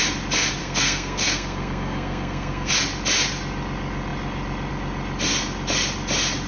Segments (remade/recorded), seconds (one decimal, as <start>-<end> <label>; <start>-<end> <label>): 0.0-0.6 recorded; 0.6-2.7 remade; 2.7-6.5 recorded